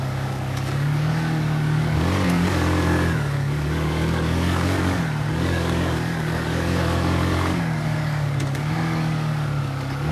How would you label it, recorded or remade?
remade